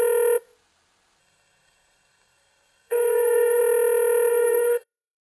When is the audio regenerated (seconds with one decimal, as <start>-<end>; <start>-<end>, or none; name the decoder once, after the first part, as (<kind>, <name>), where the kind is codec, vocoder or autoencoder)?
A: 1.2-3.6 (codec, SNAC); 4.3-5.2